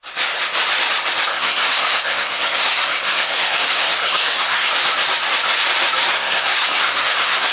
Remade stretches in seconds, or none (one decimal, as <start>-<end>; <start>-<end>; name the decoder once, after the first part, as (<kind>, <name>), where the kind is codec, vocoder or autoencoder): 1.3-4.7 (codec, SNAC); 6.1-7.5